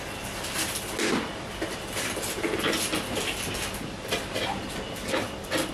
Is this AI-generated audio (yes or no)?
no